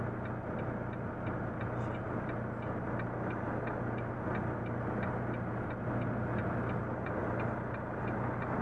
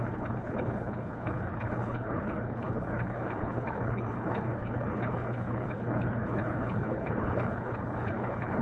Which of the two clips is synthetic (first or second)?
second